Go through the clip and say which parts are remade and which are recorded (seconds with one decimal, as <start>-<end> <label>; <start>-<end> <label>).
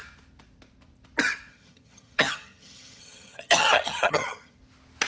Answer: 0.0-1.5 recorded; 1.5-4.6 remade; 4.6-5.1 recorded